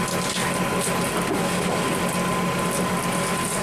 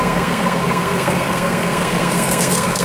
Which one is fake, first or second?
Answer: second